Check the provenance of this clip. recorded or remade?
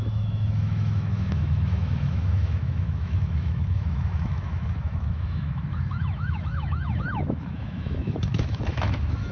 remade